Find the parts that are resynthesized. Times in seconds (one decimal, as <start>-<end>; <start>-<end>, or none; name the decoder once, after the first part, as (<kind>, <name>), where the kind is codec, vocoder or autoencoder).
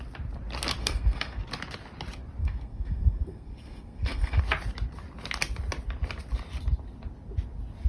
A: 0.8-1.4 (codec, SNAC); 2.4-4.4